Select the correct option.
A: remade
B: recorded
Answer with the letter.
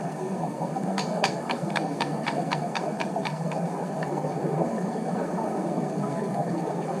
A